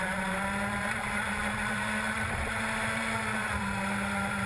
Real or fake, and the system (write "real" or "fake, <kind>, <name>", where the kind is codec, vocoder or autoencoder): fake, vocoder, BigVGAN v2